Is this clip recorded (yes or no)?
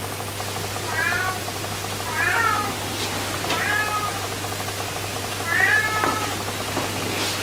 yes